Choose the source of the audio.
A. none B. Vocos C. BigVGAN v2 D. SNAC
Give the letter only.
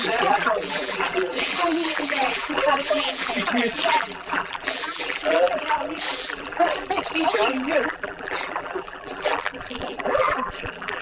C